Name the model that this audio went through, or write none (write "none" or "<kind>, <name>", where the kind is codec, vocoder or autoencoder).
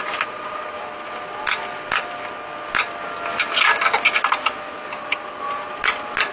none